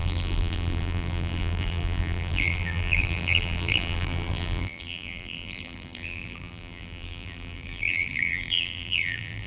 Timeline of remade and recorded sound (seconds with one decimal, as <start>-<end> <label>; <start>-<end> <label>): 0.0-9.5 remade